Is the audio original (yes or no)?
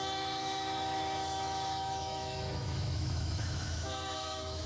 no